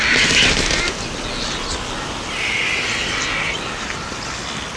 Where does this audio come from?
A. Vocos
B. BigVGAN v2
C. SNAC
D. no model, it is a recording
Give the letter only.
D